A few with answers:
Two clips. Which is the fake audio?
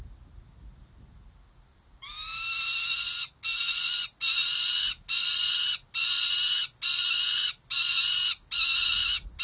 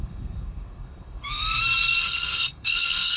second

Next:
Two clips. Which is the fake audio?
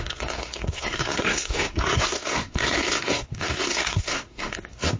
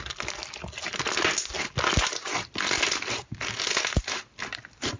first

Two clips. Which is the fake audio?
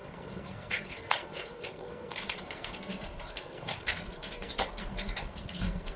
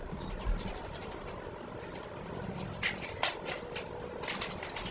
first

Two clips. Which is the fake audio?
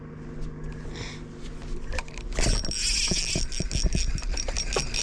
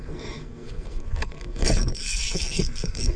second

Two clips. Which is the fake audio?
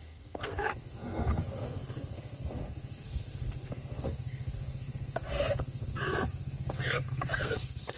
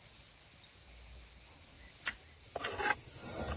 first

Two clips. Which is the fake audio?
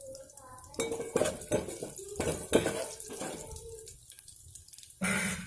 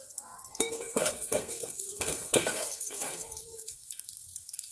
second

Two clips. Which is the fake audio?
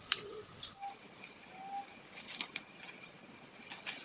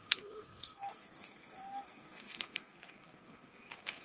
second